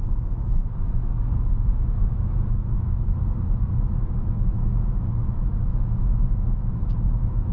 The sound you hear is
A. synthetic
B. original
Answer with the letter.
A